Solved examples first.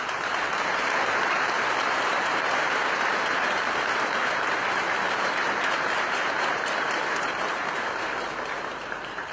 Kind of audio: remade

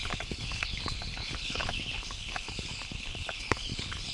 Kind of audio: remade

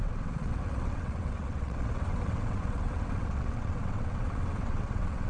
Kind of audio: remade